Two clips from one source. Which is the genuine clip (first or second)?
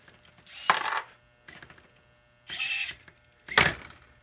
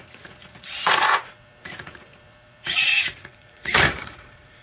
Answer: first